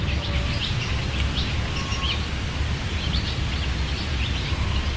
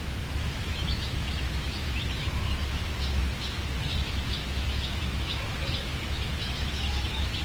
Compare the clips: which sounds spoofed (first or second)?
second